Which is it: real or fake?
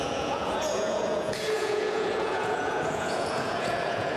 fake